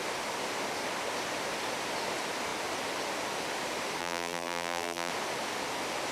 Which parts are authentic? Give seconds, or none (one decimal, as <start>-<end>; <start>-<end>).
0.0-4.0; 5.1-6.1